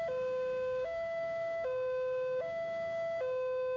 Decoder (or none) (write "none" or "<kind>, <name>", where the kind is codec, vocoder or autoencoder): codec, DAC